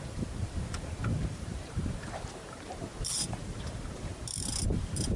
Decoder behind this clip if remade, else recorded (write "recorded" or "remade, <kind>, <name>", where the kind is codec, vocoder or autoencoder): remade, vocoder, BigVGAN v2